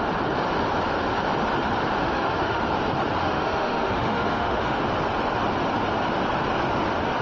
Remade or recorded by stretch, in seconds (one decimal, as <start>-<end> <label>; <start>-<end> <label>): 0.0-2.0 recorded; 2.0-2.6 remade; 2.6-3.2 recorded; 3.2-4.8 remade; 4.8-7.2 recorded